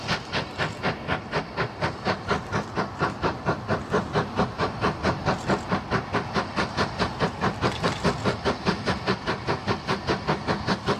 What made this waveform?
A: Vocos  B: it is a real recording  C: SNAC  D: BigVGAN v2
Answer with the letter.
B